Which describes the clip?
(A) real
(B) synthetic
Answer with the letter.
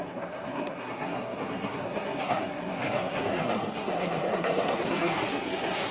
B